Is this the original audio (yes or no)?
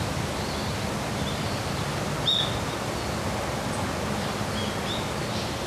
yes